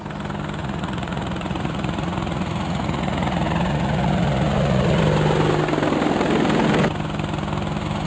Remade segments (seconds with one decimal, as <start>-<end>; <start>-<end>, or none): 0.6-5.0